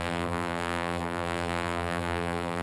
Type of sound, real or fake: fake